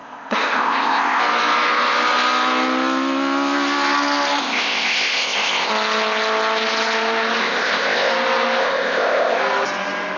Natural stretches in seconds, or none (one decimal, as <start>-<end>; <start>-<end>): 1.2-4.4; 5.7-7.4; 8.1-8.6; 9.4-10.2